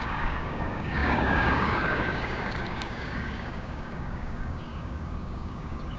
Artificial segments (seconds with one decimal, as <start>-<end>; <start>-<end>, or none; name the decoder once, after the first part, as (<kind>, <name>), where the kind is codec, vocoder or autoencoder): 0.0-6.0 (codec, DAC)